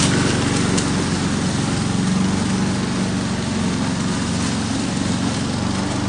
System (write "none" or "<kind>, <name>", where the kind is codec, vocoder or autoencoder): none